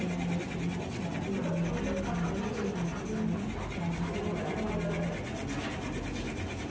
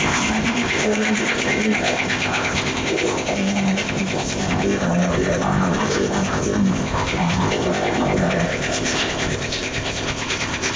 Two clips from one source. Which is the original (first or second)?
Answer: first